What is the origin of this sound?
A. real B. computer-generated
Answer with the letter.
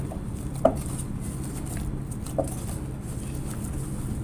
A